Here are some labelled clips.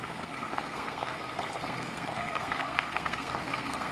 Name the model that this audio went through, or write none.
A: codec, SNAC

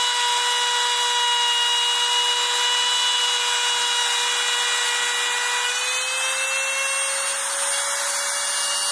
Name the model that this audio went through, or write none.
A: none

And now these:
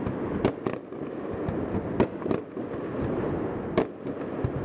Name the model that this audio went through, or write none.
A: none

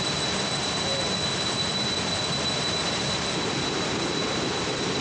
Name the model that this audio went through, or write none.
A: none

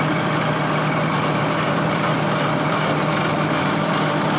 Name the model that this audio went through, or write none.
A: vocoder, BigVGAN v2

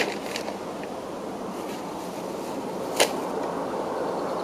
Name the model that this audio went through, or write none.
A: none